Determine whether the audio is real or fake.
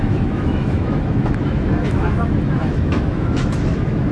fake